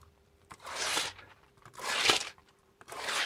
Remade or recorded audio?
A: remade